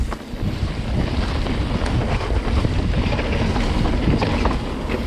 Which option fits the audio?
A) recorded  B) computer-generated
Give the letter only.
A